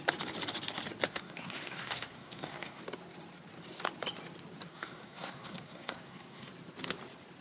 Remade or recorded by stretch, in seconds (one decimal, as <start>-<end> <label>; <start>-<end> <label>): 0.0-1.1 recorded; 1.1-2.8 remade; 2.8-4.7 recorded; 4.7-6.5 remade; 6.5-7.4 recorded